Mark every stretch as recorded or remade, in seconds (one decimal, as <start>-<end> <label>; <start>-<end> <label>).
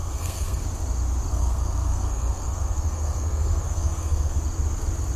0.0-0.6 remade; 0.6-1.3 recorded; 1.3-4.4 remade; 4.4-5.2 recorded